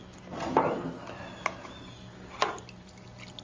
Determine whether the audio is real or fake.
real